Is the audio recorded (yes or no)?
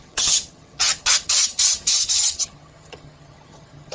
no